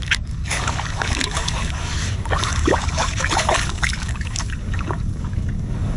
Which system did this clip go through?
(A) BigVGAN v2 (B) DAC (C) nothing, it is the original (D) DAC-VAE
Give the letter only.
B